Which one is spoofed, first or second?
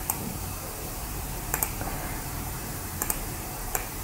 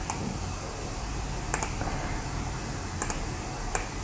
first